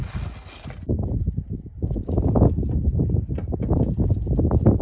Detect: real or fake real